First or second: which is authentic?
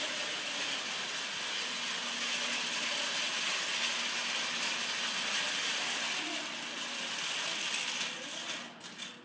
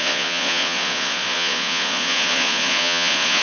first